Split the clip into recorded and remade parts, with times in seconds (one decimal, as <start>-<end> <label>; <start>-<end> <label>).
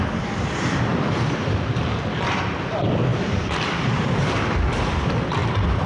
0.0-0.9 recorded; 0.9-1.8 remade; 1.8-3.1 recorded; 3.1-4.3 remade; 4.3-5.4 recorded; 5.4-5.9 remade